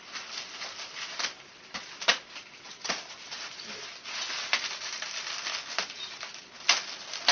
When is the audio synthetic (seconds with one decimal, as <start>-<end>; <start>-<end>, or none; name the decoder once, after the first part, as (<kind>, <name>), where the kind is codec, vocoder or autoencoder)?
none